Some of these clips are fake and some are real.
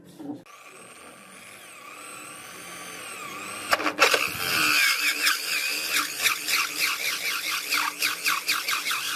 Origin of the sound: real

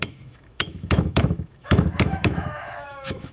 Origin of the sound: fake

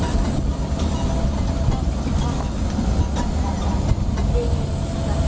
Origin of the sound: real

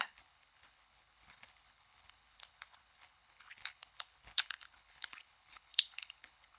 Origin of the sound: fake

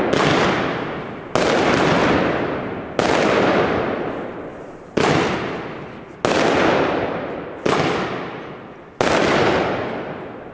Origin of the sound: real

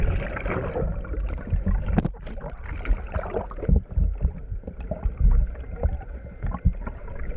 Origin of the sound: real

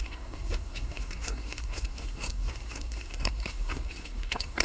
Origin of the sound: fake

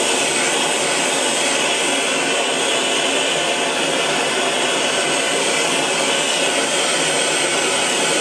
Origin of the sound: real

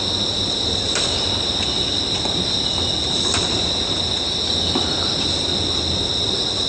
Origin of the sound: real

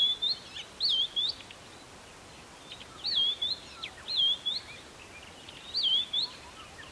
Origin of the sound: real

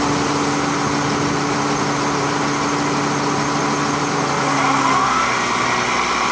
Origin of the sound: real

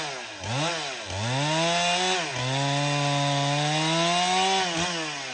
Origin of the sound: real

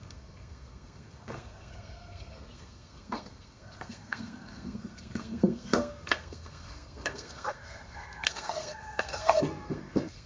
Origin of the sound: fake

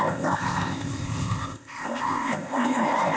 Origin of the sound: fake